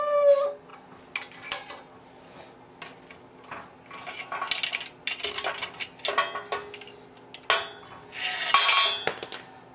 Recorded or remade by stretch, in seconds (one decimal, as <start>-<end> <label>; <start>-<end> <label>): 0.0-9.7 recorded